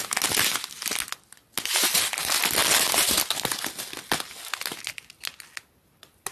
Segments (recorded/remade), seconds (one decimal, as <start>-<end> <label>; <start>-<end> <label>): 0.0-6.3 recorded